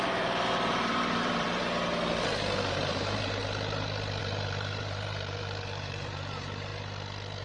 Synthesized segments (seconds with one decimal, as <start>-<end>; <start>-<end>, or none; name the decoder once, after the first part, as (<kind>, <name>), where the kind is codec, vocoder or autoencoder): 0.0-1.6 (vocoder, BigVGAN v2); 2.2-3.4; 4.2-6.7